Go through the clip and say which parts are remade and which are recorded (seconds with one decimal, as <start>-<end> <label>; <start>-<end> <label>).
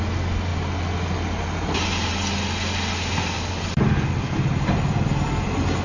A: 0.0-5.8 recorded